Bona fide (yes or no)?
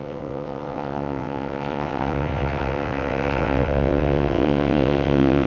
no